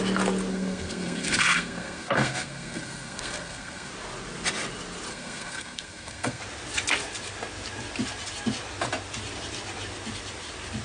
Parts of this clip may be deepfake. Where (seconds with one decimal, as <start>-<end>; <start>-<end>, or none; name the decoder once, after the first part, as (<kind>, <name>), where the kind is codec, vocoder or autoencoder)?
0.5-3.9 (codec, SNAC); 5.1-6.4